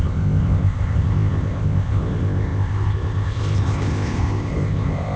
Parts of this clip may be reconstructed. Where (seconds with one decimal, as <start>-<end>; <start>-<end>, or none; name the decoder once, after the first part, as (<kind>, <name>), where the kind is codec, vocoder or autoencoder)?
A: 0.0-5.2 (codec, ZipCodec)